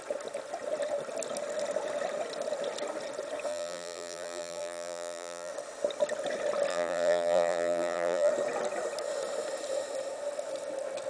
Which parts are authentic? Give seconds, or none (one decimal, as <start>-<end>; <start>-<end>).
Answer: 0.0-3.5; 5.5-6.7; 8.3-11.1